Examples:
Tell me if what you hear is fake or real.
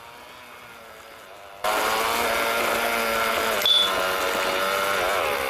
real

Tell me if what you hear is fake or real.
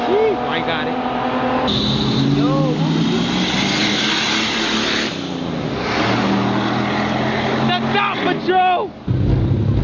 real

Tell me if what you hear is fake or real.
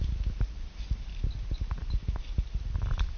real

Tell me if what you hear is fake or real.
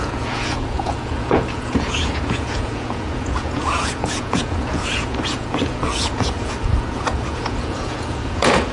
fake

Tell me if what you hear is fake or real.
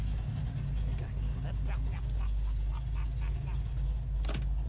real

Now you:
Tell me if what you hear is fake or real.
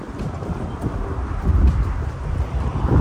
real